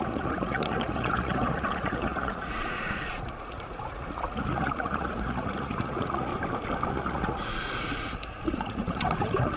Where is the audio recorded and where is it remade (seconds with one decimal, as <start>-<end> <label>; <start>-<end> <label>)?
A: 0.0-6.3 remade; 6.3-6.9 recorded; 6.9-9.6 remade